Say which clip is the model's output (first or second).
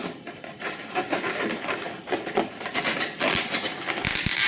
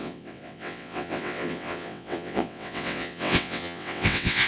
second